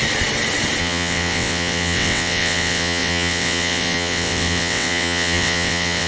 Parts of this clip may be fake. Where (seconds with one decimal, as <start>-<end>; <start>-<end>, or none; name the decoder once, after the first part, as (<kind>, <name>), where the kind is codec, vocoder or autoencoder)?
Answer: 0.8-6.1 (vocoder, WaveNeXt)